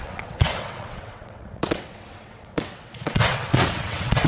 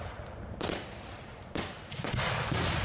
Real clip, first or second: second